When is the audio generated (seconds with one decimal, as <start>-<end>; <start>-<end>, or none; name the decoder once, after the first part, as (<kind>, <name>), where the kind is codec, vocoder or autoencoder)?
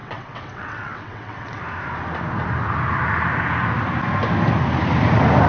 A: 0.0-1.6 (vocoder, WaveNeXt)